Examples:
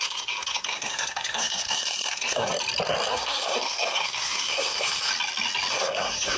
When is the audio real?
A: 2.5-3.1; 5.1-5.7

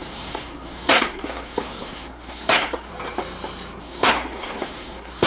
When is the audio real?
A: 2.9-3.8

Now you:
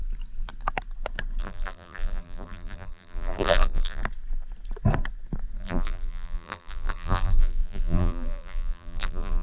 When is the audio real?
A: 0.0-1.4; 4.0-5.6

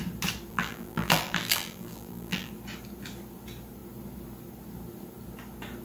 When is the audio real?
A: 0.0-0.5; 2.5-5.8